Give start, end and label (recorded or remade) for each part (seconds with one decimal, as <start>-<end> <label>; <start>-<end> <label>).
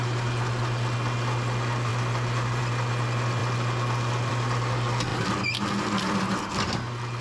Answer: 0.0-7.2 recorded